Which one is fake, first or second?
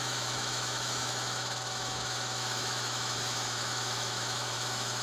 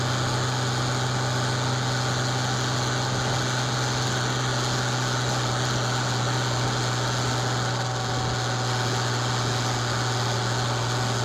first